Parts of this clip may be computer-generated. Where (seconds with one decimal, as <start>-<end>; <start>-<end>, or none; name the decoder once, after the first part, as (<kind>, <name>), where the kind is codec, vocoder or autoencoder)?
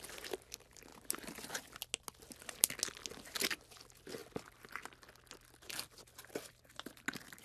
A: none